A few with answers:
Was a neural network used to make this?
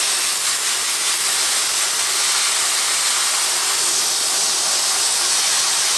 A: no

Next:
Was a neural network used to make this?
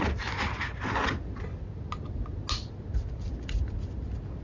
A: no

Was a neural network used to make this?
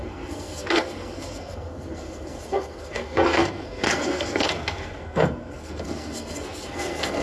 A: yes